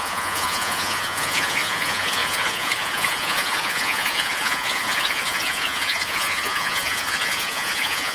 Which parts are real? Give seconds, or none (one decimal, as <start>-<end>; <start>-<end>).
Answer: none